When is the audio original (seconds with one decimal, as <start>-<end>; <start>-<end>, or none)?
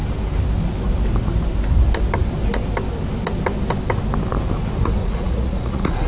0.0-5.0